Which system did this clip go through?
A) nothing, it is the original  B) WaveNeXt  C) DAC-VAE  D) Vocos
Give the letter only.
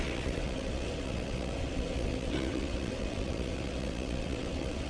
B